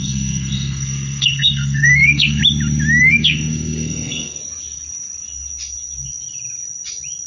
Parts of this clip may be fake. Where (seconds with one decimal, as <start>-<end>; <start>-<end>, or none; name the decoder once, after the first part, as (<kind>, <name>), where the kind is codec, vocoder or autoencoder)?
0.0-2.4 (codec, SNAC); 3.0-4.4